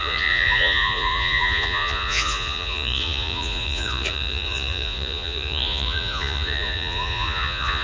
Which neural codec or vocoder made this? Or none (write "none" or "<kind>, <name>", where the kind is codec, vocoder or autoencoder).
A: vocoder, Vocos